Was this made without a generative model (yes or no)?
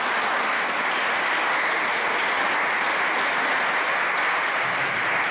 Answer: yes